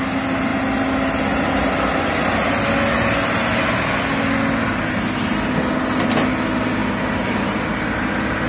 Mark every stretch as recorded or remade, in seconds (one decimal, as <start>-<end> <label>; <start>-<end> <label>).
0.0-8.5 recorded